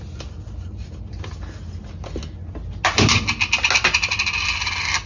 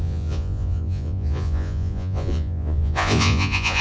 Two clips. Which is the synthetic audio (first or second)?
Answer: second